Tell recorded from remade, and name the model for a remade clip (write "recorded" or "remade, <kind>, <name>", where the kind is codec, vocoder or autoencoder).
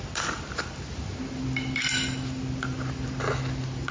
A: recorded